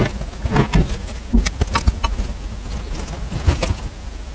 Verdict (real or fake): real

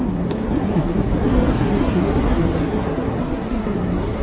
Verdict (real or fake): fake